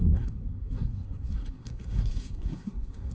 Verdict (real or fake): fake